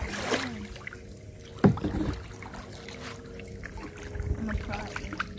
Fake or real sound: real